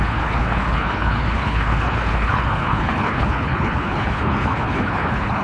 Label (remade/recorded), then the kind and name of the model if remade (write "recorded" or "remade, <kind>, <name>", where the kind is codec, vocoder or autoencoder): remade, codec, HILCodec